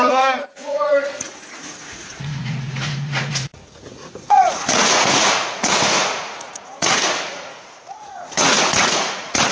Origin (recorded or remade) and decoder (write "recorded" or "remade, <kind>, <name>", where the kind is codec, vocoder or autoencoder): remade, vocoder, Vocos